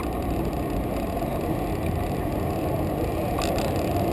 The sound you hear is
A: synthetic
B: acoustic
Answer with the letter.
B